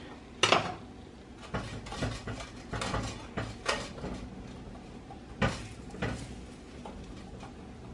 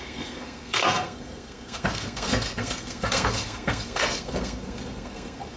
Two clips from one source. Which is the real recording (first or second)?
first